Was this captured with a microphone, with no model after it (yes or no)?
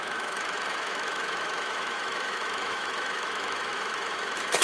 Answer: no